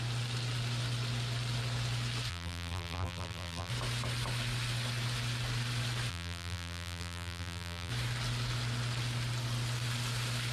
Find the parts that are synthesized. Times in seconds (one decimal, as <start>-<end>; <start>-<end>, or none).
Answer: 2.3-3.7; 6.1-7.9